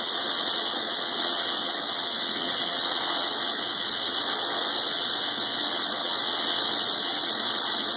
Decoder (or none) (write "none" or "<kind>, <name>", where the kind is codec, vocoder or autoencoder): vocoder, WaveNeXt